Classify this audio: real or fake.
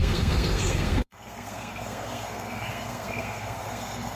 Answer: fake